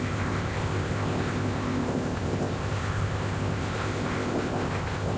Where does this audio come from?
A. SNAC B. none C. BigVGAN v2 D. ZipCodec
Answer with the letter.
D